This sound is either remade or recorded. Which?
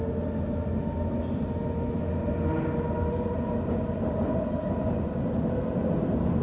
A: recorded